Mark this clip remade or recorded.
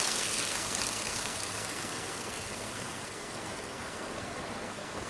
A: remade